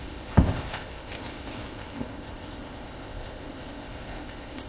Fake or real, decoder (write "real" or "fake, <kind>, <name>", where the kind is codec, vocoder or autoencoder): fake, codec, ZipCodec